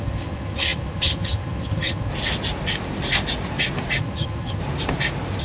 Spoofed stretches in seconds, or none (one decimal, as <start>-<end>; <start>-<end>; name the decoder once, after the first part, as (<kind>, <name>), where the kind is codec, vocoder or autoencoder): 0.0-2.1 (vocoder, HiFi-GAN); 4.0-4.6